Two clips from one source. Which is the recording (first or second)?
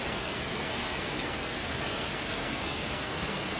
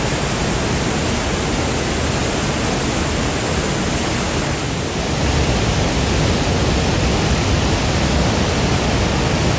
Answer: second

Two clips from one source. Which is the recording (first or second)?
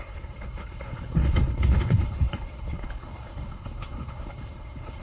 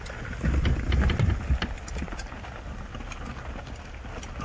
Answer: second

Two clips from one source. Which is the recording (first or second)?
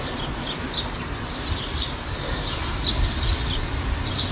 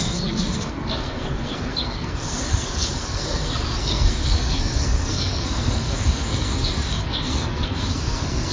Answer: first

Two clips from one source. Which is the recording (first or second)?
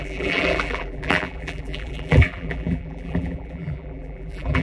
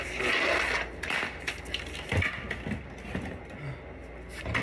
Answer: second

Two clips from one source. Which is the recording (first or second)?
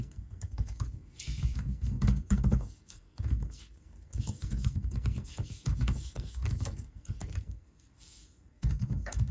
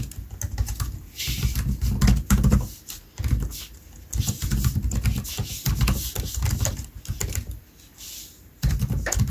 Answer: second